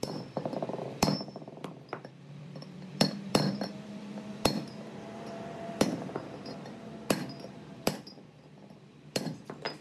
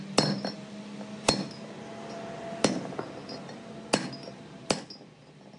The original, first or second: second